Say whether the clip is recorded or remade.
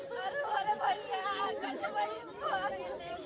recorded